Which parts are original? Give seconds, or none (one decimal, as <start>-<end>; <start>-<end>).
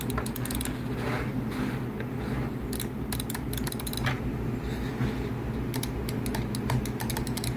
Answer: 0.0-7.6